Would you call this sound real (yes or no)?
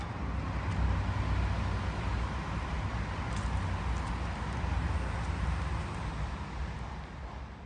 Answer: yes